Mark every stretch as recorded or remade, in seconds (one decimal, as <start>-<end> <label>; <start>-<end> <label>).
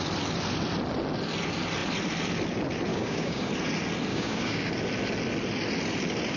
0.0-2.9 recorded; 2.9-3.4 remade; 3.4-4.1 recorded; 4.1-4.7 remade; 4.7-6.4 recorded